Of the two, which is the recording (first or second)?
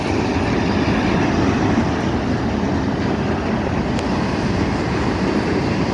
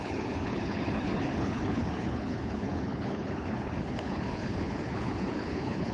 first